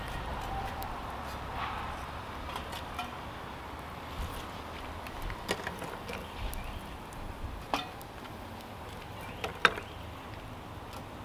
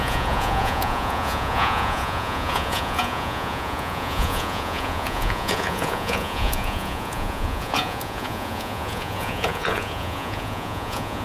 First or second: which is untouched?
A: first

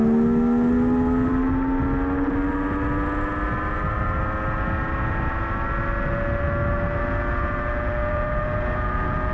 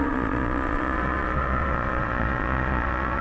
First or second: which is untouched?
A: first